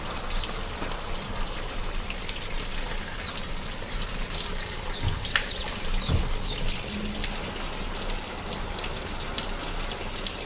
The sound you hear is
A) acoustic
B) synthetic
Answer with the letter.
A